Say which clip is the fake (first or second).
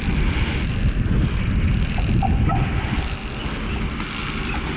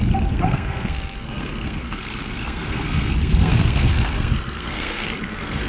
second